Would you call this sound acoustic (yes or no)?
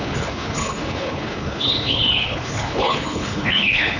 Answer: no